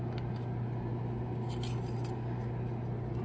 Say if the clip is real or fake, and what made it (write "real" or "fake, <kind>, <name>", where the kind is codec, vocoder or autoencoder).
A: real